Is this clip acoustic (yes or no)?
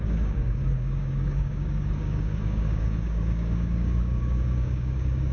no